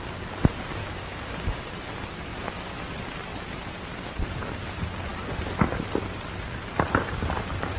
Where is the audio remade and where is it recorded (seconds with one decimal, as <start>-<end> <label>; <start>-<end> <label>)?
0.0-0.8 recorded; 0.8-1.7 remade; 1.7-7.8 recorded